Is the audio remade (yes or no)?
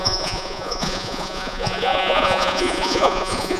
yes